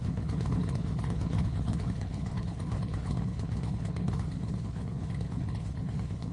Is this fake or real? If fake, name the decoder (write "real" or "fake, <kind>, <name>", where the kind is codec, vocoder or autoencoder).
fake, codec, HILCodec